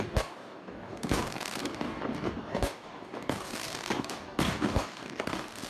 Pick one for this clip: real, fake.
fake